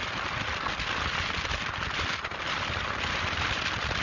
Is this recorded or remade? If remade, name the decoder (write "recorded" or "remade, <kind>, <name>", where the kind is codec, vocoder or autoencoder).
recorded